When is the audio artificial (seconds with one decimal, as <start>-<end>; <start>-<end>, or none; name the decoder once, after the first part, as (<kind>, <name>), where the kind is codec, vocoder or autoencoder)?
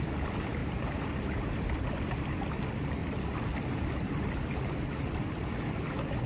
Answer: 0.6-1.1 (vocoder, BigVGAN v2)